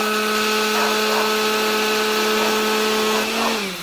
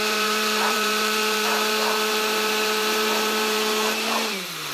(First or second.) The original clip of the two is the first